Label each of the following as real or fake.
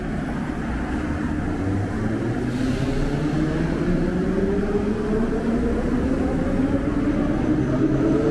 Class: real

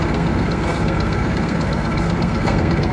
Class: fake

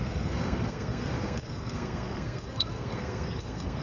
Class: fake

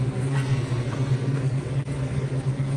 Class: fake